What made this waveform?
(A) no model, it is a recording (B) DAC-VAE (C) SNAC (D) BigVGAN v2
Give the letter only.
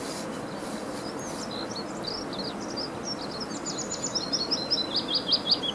A